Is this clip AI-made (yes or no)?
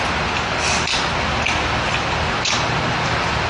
no